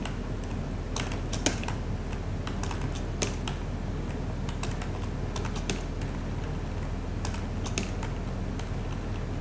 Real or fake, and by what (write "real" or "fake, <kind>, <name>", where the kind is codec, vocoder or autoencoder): real